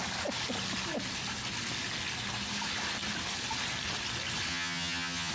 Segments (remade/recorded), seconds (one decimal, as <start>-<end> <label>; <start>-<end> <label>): 0.0-4.5 recorded; 4.5-5.3 remade